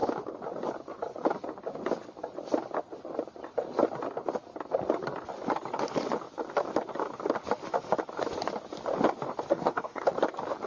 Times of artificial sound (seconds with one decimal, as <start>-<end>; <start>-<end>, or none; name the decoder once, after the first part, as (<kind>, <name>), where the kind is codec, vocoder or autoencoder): 9.5-10.0 (codec, SNAC)